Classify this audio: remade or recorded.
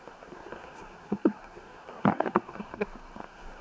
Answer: remade